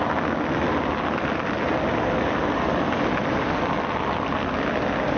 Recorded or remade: recorded